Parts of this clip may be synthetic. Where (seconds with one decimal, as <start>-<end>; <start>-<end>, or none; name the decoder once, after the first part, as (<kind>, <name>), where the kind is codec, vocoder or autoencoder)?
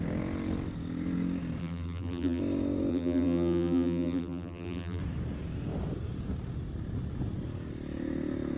1.6-2.4 (vocoder, BigVGAN v2); 2.9-5.0